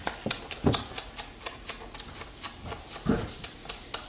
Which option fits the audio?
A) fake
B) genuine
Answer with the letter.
B